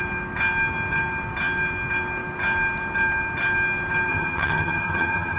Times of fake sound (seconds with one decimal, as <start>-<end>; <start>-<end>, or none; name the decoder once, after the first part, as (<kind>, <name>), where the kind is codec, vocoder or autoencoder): 4.1-5.4 (vocoder, HiFi-GAN)